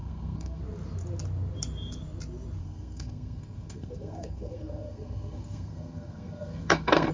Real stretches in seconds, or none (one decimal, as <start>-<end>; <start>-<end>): 0.6-2.6